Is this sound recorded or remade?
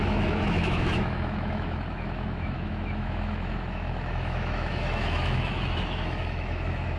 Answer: remade